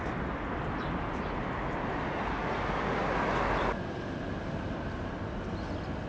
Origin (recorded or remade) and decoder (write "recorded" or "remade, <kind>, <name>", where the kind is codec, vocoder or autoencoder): recorded